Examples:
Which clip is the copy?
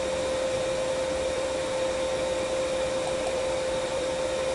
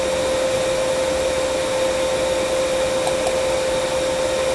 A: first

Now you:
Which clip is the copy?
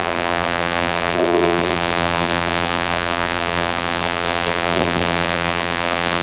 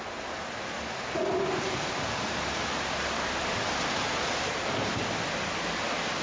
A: first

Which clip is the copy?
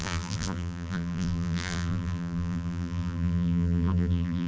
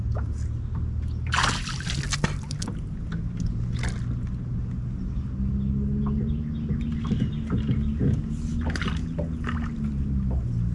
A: first